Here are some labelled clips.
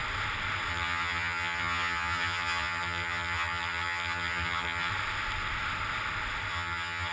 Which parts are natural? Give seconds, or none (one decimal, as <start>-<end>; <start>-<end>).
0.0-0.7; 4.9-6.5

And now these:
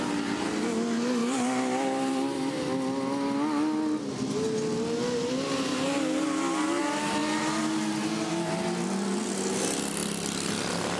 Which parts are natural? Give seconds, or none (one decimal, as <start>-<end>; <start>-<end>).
0.0-1.2; 2.5-10.0; 10.5-11.0

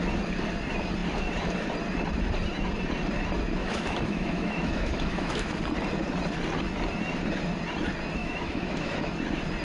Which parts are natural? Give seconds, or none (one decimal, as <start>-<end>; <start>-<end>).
0.0-3.6; 5.6-8.2; 9.1-9.6

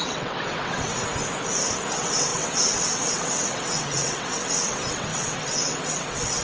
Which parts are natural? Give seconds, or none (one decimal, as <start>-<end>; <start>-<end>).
1.1-1.9

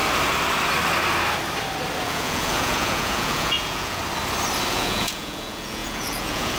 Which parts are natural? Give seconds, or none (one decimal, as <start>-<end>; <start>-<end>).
0.0-2.0; 4.0-4.7

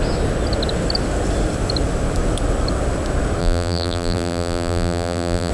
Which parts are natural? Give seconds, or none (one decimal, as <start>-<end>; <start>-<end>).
0.0-3.4

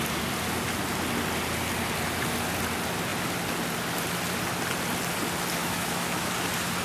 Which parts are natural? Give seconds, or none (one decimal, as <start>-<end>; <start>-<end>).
0.0-5.6; 6.3-6.8

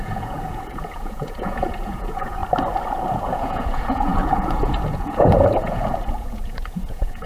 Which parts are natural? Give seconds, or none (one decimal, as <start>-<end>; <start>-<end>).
2.4-3.0